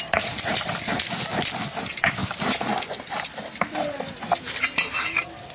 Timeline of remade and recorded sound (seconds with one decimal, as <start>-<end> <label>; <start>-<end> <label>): 0.0-5.5 recorded

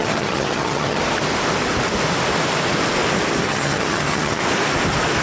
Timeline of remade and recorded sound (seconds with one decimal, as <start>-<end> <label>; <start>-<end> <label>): 0.0-1.0 remade; 1.0-3.4 recorded; 3.4-4.4 remade; 4.4-5.2 recorded

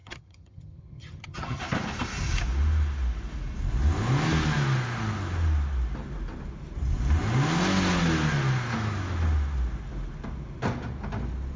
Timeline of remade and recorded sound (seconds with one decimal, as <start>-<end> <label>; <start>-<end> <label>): 0.0-1.6 remade; 1.6-11.6 recorded